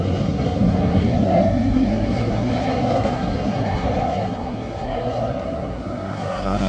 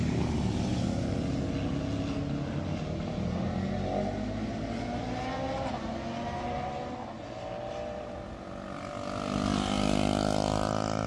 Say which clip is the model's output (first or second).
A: first